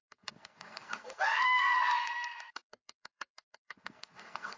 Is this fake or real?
fake